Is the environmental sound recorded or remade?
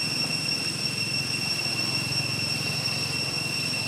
recorded